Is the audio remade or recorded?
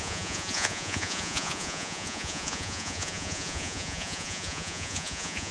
remade